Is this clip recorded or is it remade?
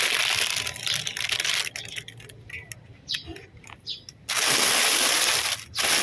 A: recorded